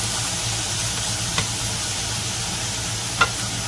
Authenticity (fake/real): real